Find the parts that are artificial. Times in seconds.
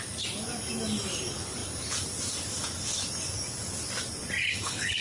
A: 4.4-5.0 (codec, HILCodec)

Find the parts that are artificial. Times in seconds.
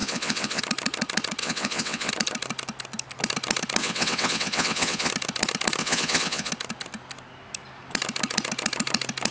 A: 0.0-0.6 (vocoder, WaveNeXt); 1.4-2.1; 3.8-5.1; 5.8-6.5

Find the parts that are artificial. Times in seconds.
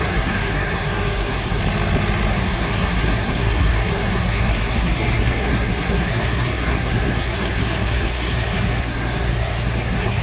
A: 0.0-1.6 (codec, SNAC); 2.3-10.2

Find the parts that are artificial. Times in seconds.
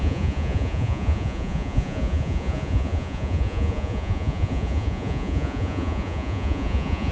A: 0.0-7.1 (vocoder, Vocos)